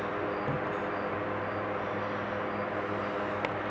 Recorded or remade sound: recorded